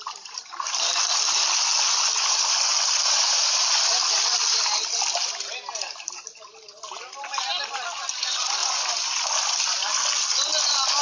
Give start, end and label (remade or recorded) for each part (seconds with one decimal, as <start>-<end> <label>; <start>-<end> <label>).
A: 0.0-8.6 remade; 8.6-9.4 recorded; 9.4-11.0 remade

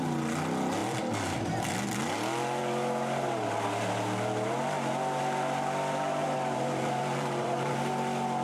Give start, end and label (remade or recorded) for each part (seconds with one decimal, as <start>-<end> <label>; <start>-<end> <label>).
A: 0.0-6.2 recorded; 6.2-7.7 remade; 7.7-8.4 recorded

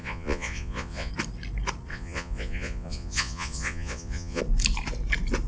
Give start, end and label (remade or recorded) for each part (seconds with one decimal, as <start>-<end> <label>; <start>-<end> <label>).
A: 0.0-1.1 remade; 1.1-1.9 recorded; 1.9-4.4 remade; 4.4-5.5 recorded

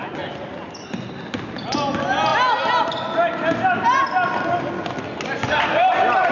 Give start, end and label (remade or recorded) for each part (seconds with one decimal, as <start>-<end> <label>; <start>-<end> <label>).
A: 0.0-6.3 recorded